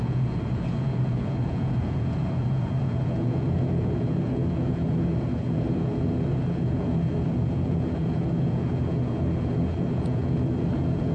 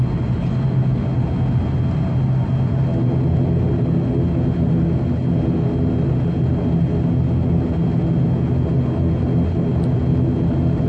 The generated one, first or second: first